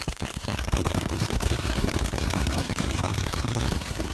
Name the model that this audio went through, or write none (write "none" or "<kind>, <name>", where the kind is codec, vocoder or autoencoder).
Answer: codec, SNAC